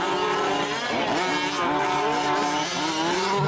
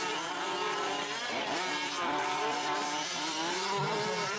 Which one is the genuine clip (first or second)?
first